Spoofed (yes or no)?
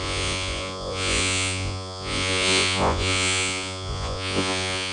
yes